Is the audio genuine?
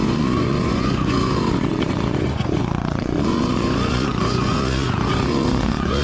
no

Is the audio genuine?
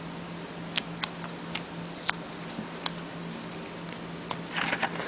yes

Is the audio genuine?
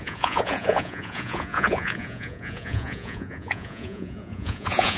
no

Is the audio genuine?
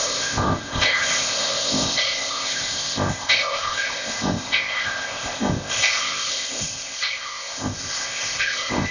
no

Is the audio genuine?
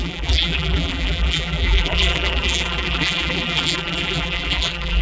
no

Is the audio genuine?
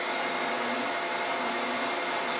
yes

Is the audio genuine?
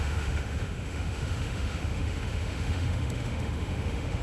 no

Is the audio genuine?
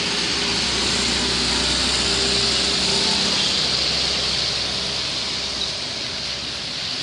yes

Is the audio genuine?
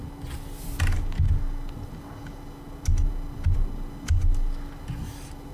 yes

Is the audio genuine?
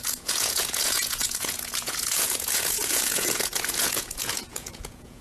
no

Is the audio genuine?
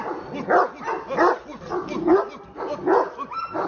yes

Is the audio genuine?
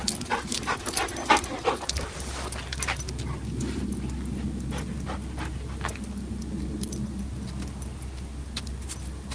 yes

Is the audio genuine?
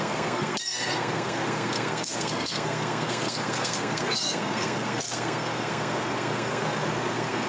no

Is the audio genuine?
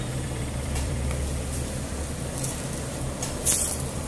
no